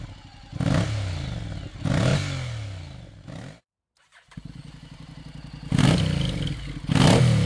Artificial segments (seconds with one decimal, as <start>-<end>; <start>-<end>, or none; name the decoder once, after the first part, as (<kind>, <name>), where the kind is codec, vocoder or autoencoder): none